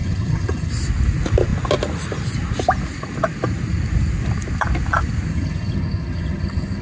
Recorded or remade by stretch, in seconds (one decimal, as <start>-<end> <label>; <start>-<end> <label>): 0.0-0.7 remade; 0.7-5.3 recorded; 5.3-6.8 remade